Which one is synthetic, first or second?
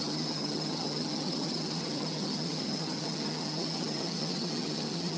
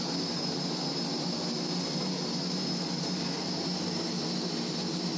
first